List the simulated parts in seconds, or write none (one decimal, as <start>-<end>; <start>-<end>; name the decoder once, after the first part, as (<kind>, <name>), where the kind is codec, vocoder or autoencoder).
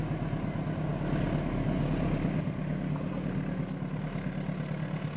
none